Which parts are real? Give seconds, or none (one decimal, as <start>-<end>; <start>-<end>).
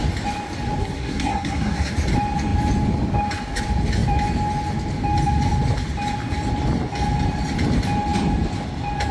0.0-0.8; 1.9-9.1